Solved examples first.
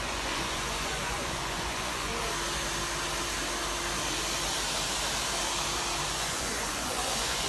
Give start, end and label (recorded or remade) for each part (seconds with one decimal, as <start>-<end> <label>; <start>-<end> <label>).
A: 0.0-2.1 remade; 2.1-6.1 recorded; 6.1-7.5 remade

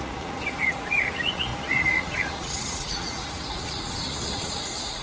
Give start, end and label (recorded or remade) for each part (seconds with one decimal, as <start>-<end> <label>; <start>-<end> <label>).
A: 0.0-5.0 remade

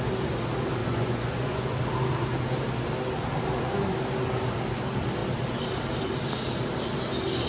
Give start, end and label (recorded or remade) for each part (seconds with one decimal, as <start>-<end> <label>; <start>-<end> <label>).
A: 0.0-0.8 recorded; 0.8-1.8 remade; 1.8-7.5 recorded

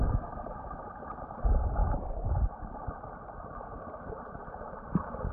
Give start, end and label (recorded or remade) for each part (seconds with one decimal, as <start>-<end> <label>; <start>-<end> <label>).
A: 0.0-5.3 recorded